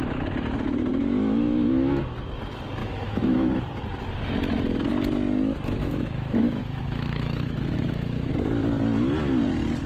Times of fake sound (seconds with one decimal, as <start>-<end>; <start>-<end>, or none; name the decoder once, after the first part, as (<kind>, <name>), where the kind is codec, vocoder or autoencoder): 0.9-2.0 (autoencoder, DAC-VAE); 2.8-3.5; 5.8-8.3